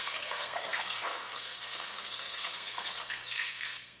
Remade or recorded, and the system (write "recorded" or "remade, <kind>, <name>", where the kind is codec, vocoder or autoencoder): remade, codec, SNAC